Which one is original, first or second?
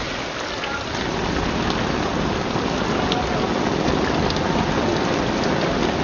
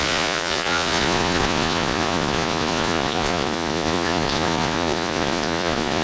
first